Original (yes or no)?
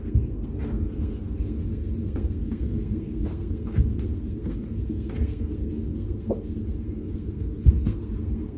no